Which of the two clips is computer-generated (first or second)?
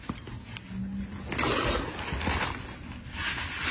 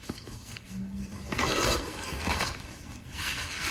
second